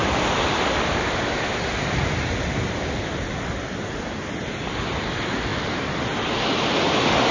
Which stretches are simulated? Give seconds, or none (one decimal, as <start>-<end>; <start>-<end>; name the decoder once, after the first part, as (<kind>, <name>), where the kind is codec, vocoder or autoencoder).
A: 0.0-2.7 (vocoder, BigVGAN v2)

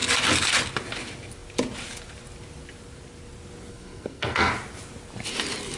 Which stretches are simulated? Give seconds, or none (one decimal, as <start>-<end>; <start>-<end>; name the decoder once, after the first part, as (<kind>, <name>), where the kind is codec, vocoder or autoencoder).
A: 3.7-4.5 (codec, SNAC)

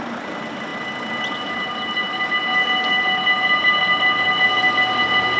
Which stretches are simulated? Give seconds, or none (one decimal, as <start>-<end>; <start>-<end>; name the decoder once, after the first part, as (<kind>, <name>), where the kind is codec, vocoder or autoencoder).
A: none

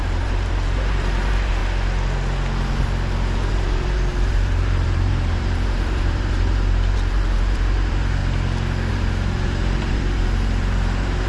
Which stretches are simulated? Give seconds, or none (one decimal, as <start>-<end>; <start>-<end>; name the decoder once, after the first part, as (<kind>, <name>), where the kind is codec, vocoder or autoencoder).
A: 0.0-1.6 (vocoder, BigVGAN v2); 3.5-8.2; 8.9-11.3

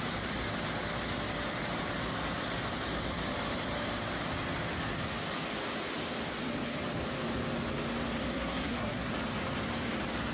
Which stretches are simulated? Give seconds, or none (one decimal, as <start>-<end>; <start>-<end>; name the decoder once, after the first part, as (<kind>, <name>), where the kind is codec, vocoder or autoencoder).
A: 8.3-9.1 (codec, SNAC)